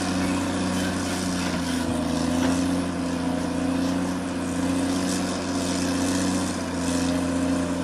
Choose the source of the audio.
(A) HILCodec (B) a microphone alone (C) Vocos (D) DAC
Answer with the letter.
B